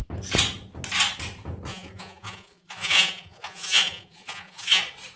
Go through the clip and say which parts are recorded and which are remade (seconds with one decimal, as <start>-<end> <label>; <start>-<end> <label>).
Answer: 0.0-1.7 recorded; 1.7-4.8 remade; 4.8-5.2 recorded